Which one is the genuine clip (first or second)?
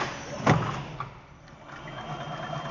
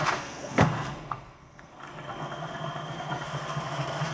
first